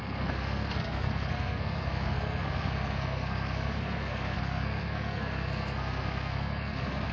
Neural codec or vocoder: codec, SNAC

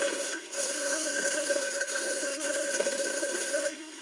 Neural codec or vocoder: codec, SNAC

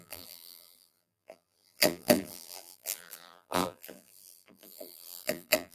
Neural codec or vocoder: vocoder, BigVGAN v2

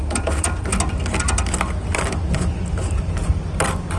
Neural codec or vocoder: none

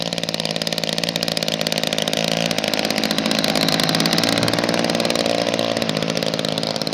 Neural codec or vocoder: none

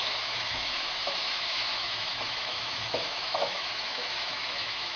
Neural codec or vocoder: autoencoder, DAC-VAE